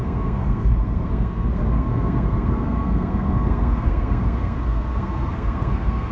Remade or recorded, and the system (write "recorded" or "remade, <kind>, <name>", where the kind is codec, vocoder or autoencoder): remade, codec, SNAC